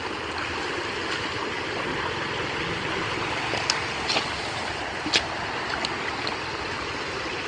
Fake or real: real